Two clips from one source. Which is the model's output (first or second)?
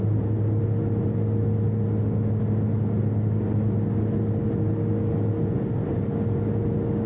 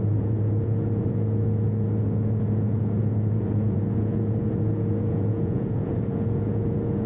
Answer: second